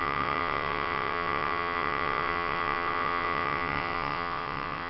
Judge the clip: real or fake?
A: fake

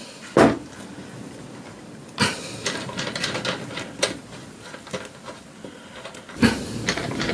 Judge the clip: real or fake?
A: real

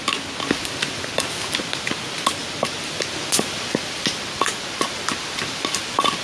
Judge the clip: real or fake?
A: real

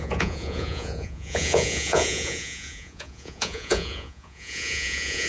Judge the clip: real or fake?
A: fake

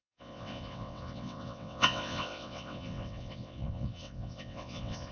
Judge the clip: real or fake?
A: fake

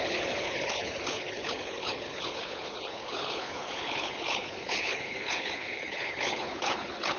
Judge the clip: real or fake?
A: fake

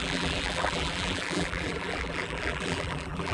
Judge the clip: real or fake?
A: fake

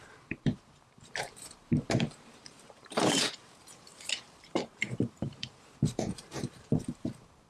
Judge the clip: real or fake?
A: fake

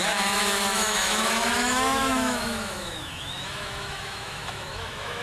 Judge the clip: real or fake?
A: fake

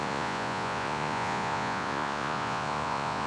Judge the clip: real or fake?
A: fake